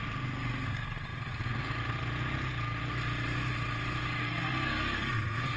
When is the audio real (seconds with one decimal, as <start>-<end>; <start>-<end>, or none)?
0.0-4.2